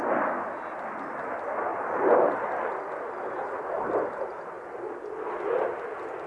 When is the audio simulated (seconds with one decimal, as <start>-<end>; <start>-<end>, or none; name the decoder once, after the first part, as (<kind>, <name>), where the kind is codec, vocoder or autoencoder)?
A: none